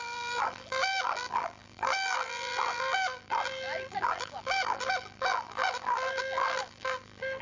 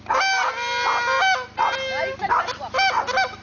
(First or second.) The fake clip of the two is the first